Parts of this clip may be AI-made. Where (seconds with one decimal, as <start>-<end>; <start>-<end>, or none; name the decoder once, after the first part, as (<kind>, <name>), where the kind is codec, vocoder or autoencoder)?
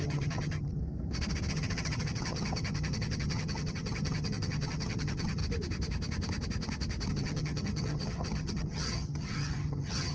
0.0-0.8 (vocoder, HiFi-GAN); 1.5-5.4; 7.1-10.1